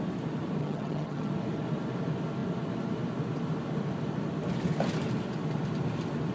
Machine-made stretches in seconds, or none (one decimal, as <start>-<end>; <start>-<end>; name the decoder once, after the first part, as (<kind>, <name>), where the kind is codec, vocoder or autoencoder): 0.6-1.3 (vocoder, HiFi-GAN)